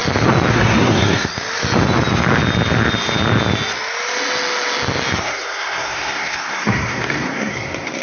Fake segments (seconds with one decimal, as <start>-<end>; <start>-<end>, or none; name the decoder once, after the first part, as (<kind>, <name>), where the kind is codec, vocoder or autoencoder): 0.5-1.3 (codec, SNAC); 5.2-8.0